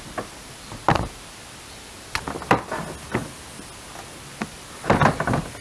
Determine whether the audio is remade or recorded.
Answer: recorded